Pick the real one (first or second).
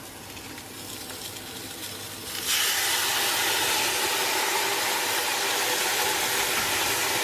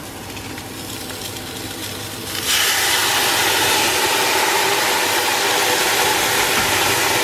first